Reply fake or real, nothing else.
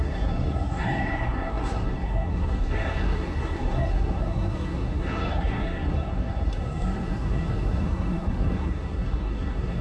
fake